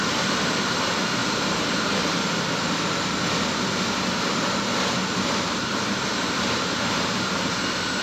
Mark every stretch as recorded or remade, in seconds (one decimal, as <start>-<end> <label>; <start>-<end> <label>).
0.0-1.2 recorded; 1.2-2.3 remade; 2.3-5.6 recorded; 5.6-8.0 remade